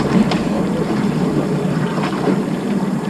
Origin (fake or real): fake